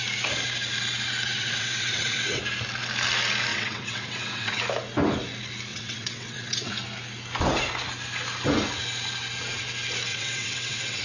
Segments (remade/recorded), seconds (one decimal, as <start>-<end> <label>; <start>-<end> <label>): 0.0-1.3 recorded; 1.3-2.4 remade; 2.4-3.5 recorded; 3.5-4.6 remade; 4.6-5.7 recorded; 5.7-6.7 remade; 6.7-10.1 recorded; 10.1-11.0 remade